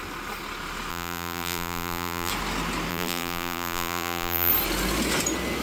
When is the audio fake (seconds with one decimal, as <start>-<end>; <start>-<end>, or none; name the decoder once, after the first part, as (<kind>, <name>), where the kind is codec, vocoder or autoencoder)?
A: 0.9-2.3 (vocoder, BigVGAN v2); 2.9-4.5